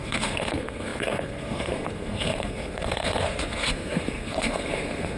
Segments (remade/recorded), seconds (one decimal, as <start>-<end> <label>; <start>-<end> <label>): 0.0-5.2 remade